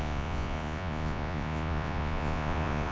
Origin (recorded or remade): remade